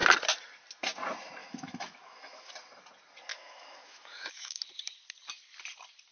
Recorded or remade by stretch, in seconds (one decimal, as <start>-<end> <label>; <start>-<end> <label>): 0.0-1.4 recorded; 1.4-2.5 remade; 2.5-3.3 recorded; 3.3-4.6 remade; 4.6-6.1 recorded